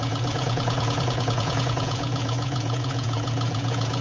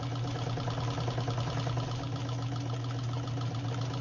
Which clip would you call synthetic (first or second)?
first